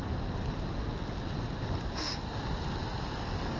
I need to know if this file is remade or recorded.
recorded